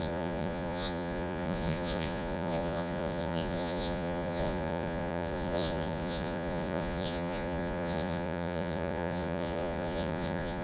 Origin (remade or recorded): remade